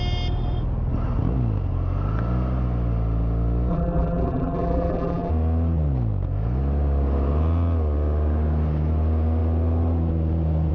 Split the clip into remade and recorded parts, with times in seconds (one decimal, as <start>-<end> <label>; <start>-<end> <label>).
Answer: 0.0-3.7 recorded; 3.7-5.3 remade; 5.3-10.7 recorded

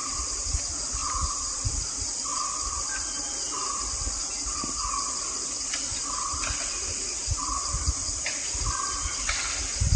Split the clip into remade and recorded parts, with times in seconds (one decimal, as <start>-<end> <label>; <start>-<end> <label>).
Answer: 0.0-0.6 remade; 0.6-1.0 recorded; 1.0-1.7 remade; 1.7-10.0 recorded

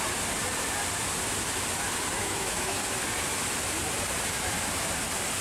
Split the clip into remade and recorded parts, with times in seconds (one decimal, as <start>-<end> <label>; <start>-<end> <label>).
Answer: 0.0-2.2 recorded; 2.2-2.8 remade; 2.8-5.4 recorded

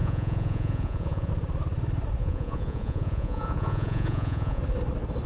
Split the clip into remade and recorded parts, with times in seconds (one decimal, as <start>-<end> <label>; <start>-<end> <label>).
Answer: 0.0-1.3 remade; 1.3-2.2 recorded; 2.2-4.6 remade; 4.6-5.3 recorded

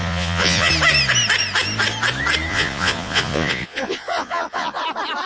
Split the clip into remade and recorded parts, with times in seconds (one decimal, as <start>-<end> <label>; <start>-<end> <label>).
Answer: 0.0-0.7 remade; 0.7-2.5 recorded; 2.5-4.8 remade; 4.8-5.3 recorded

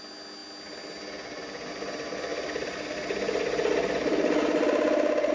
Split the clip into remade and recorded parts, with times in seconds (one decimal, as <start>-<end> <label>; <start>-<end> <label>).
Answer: 0.0-5.3 recorded